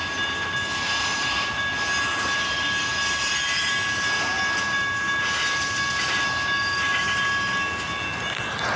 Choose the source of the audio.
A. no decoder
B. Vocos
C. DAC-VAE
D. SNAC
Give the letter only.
A